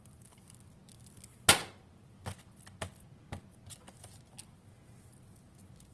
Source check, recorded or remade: recorded